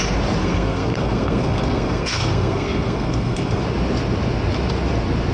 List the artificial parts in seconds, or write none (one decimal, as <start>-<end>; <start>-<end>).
0.4-3.6